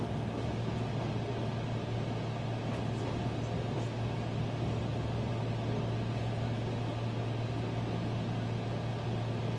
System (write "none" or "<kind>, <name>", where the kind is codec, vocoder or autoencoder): none